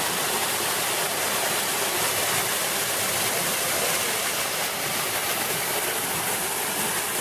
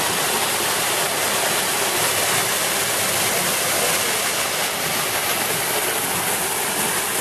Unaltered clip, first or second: second